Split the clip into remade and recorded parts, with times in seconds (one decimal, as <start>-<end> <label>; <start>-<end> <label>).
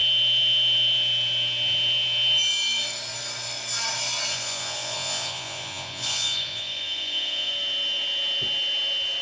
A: 0.0-4.3 recorded; 4.3-7.5 remade; 7.5-9.2 recorded